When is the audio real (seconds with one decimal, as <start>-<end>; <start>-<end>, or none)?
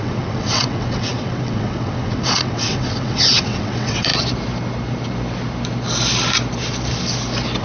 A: 4.1-7.6